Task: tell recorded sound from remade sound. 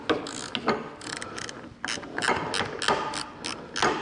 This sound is recorded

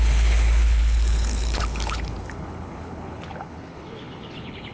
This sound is remade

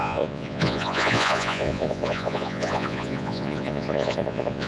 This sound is remade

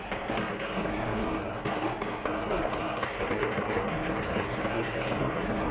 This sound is remade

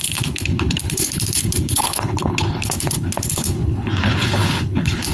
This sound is remade